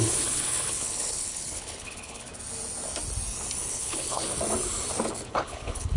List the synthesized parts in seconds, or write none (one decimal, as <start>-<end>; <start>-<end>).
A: 0.0-2.3; 3.7-4.2; 5.3-6.0